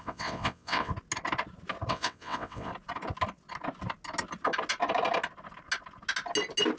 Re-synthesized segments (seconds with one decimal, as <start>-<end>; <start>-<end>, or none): 0.0-0.9; 1.9-2.7